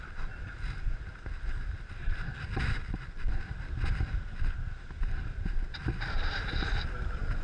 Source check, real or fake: real